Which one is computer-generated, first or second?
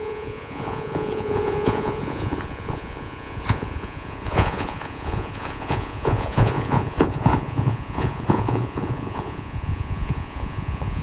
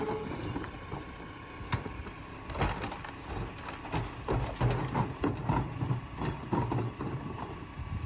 first